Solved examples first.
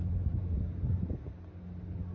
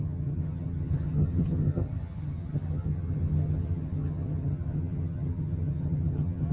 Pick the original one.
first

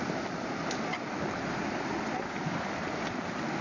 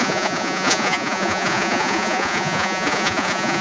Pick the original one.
first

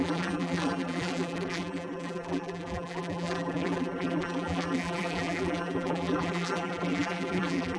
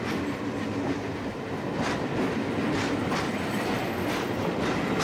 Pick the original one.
second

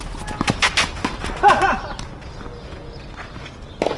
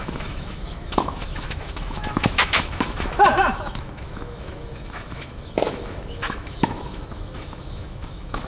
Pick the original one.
first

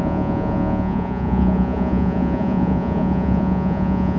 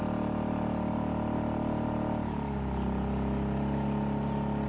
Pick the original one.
second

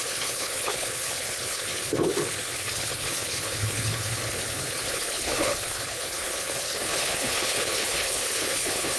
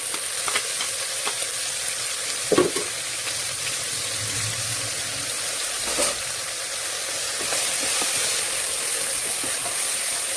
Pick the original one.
second